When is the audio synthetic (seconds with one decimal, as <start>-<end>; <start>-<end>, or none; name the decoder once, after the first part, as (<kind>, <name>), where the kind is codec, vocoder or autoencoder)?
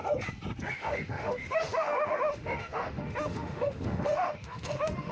0.7-5.1 (autoencoder, DAC-VAE)